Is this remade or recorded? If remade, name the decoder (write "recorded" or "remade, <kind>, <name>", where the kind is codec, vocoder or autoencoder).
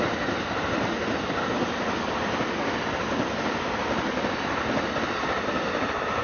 recorded